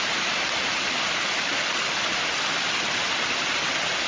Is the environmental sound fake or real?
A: real